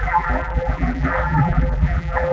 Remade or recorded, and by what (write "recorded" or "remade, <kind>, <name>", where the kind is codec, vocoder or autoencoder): remade, vocoder, BigVGAN v2